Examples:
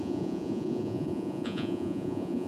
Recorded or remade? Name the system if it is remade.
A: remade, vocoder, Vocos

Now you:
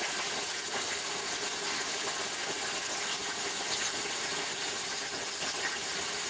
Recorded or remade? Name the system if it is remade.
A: recorded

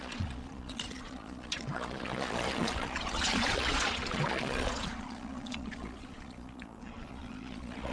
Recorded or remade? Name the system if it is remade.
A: remade, vocoder, Vocos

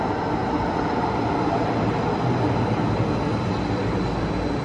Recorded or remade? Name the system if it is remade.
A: recorded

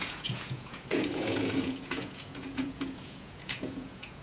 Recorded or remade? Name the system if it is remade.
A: remade, vocoder, Vocos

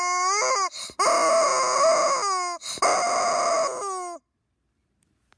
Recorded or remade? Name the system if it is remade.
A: recorded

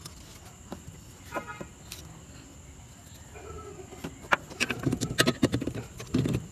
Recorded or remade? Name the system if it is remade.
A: recorded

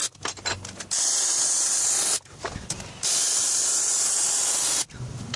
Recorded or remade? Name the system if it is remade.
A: recorded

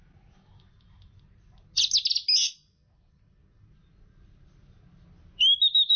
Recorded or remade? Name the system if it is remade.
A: recorded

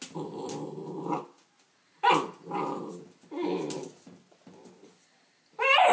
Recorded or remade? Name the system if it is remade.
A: recorded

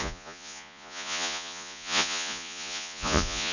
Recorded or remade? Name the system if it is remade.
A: remade, vocoder, Vocos